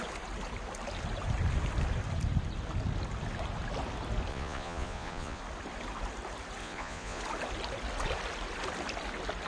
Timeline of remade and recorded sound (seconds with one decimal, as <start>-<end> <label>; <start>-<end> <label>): 0.0-4.3 recorded; 4.3-5.4 remade; 5.4-6.6 recorded; 6.6-7.2 remade; 7.2-9.5 recorded